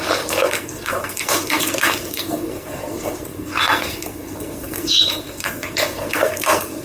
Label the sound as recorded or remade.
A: remade